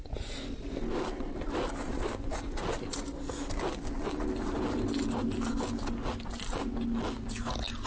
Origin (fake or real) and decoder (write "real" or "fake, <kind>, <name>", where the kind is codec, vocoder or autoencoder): real